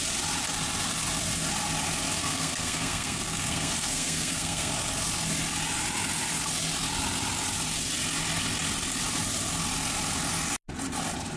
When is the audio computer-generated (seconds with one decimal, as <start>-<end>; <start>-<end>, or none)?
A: 2.2-4.7